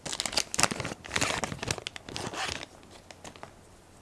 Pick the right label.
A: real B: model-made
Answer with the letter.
A